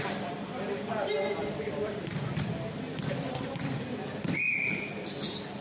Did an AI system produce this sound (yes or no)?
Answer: no